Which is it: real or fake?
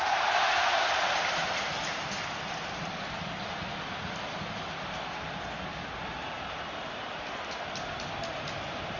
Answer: real